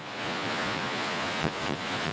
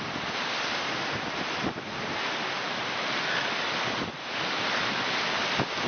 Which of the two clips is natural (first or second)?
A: second